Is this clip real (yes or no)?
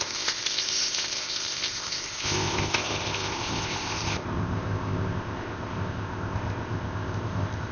no